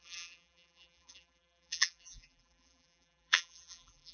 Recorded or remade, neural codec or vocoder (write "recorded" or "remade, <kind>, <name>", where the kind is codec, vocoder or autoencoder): remade, vocoder, BigVGAN v2